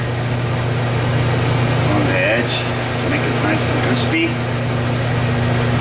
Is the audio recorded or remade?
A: recorded